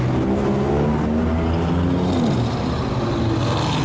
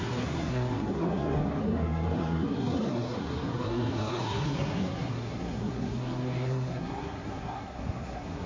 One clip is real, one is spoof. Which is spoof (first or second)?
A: second